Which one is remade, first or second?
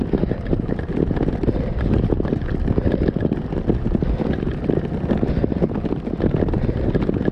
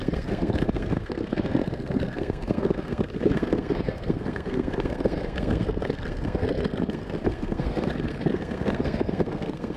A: second